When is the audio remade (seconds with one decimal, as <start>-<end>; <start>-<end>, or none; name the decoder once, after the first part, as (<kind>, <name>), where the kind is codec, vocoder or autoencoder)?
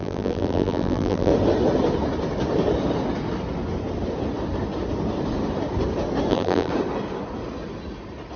0.0-1.3 (vocoder, BigVGAN v2); 6.3-6.7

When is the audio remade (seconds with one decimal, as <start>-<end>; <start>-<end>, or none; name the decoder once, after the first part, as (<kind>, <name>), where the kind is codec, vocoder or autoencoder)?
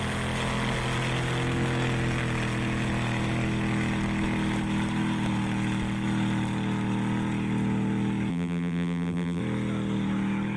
8.3-9.4 (vocoder, BigVGAN v2)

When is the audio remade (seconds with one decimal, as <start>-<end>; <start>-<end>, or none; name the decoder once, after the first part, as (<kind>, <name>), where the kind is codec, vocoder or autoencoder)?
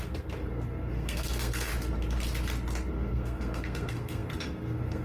0.0-1.7 (codec, SNAC); 2.9-5.0